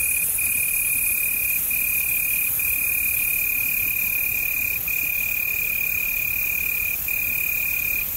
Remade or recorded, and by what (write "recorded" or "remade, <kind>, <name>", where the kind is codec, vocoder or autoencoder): recorded